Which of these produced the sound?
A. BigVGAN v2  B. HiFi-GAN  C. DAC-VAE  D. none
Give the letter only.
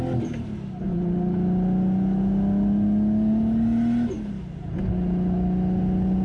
D